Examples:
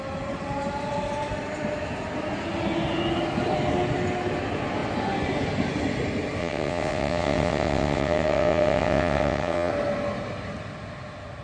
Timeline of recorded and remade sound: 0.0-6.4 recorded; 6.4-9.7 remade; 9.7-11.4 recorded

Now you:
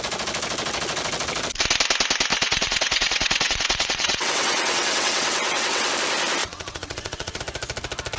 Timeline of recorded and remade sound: 0.0-2.3 recorded; 2.3-5.9 remade; 5.9-6.4 recorded; 6.4-7.4 remade; 7.4-8.2 recorded

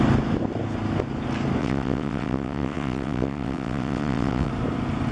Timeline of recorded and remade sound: 0.0-1.6 recorded; 1.6-4.5 remade; 4.5-5.1 recorded

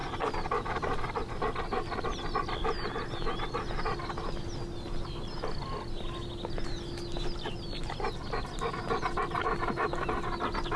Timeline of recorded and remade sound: 0.0-10.8 recorded

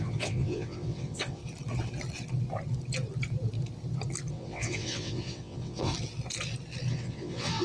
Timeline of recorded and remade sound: 0.0-1.4 remade; 1.4-4.3 recorded; 4.3-5.9 remade; 5.9-6.9 recorded; 6.9-7.6 remade